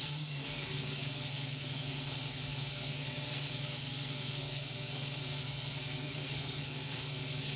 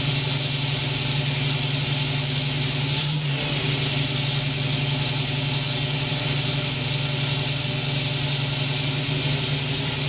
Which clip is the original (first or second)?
second